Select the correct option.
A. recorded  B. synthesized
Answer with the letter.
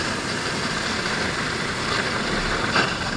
A